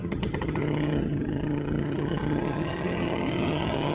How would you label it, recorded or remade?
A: remade